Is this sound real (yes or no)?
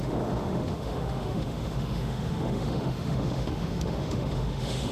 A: no